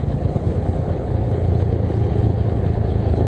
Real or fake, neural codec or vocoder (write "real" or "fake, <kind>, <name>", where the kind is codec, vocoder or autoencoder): fake, codec, HILCodec